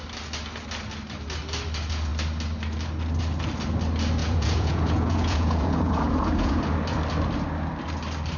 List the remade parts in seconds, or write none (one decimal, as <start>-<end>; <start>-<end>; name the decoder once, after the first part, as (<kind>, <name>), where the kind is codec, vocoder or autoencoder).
4.2-6.6 (vocoder, Vocos)